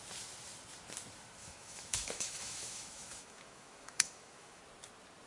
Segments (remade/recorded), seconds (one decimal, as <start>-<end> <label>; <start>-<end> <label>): 0.0-1.4 recorded; 1.4-4.6 remade; 4.6-5.3 recorded